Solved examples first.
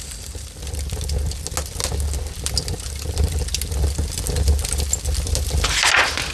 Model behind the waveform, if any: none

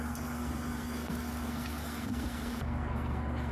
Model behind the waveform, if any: codec, SNAC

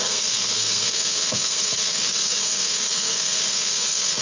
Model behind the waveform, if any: codec, SNAC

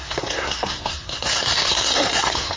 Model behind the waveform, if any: codec, SNAC